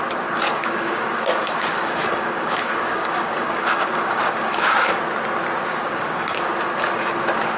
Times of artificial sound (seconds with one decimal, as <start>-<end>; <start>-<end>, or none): 0.5-5.0; 5.7-6.5